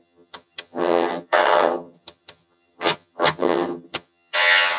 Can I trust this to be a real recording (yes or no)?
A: no